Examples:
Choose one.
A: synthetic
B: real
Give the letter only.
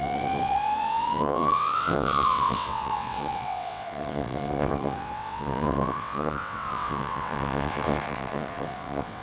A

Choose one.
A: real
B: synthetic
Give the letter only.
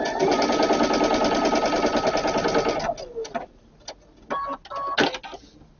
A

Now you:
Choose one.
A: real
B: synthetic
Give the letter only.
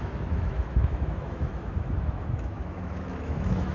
B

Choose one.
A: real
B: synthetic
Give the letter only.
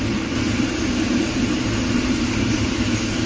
A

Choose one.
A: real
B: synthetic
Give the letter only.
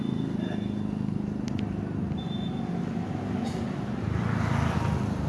A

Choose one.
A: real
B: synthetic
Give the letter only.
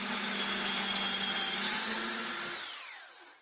A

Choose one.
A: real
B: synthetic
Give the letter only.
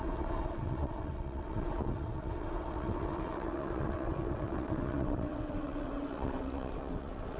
B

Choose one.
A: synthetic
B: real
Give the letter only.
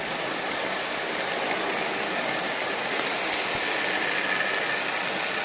B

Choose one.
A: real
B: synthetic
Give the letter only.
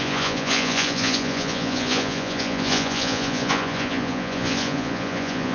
B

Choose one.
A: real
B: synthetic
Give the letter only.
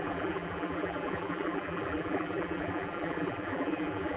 B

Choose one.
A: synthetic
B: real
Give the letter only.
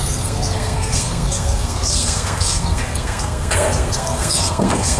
A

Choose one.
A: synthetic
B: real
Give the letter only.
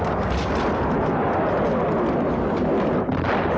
B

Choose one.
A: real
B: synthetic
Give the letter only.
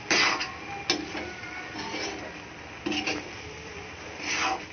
A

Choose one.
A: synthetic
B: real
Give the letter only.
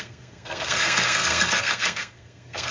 A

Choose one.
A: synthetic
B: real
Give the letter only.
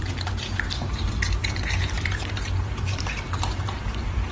A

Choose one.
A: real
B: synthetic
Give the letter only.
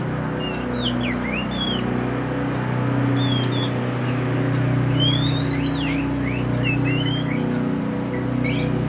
A